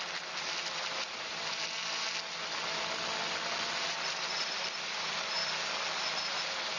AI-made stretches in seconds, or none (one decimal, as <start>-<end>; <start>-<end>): 0.0-1.8; 3.8-5.4; 6.3-6.8